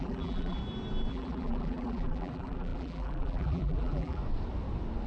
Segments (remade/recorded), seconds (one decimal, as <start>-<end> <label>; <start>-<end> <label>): 0.0-0.6 remade; 0.6-1.1 recorded; 1.1-4.2 remade; 4.2-5.1 recorded